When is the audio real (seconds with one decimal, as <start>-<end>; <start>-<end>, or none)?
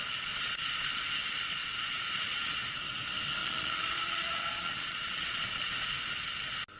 0.9-1.6; 2.7-3.4; 5.7-6.8